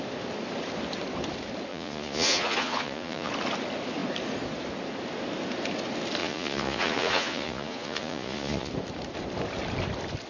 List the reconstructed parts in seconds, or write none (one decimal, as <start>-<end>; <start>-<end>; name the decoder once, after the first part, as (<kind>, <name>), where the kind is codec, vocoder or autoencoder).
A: 1.7-3.3 (vocoder, Vocos); 6.2-8.7